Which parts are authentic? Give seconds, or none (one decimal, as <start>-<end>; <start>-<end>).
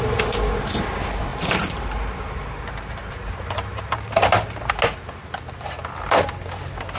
0.0-1.3; 4.7-7.0